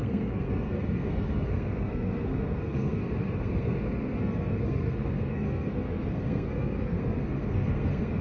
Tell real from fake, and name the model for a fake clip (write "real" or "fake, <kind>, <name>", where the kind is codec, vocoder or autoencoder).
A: fake, codec, SNAC